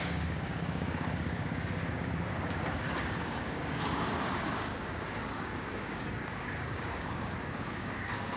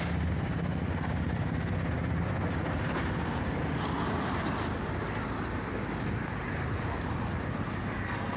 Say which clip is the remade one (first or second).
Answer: first